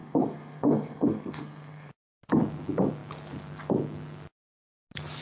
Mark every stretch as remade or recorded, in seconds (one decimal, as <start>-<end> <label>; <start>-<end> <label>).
0.0-1.9 remade; 1.9-5.2 recorded

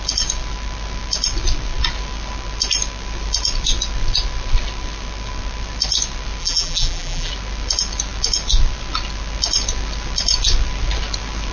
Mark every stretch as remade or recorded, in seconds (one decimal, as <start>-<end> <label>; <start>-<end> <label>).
0.0-6.4 recorded; 6.4-7.3 remade; 7.3-11.5 recorded

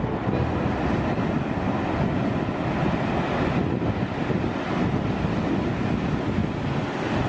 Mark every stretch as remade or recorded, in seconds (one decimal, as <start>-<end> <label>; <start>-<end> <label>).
0.0-7.3 recorded

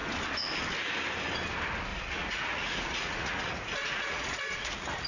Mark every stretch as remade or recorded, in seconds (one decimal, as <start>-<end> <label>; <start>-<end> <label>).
0.0-1.9 recorded; 1.9-5.1 remade